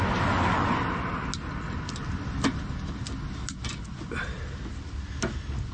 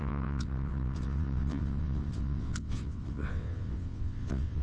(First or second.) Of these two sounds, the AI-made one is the second